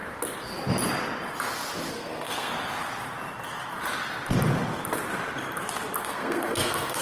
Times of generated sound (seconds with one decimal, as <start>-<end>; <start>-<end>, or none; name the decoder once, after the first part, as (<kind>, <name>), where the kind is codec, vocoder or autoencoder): 1.9-2.5 (codec, SNAC); 6.0-7.0